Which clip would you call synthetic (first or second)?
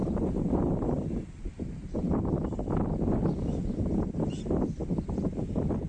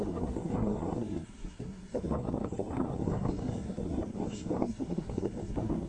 second